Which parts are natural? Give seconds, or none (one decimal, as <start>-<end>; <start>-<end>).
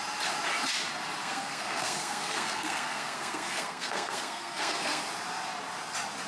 0.0-1.2; 5.0-6.3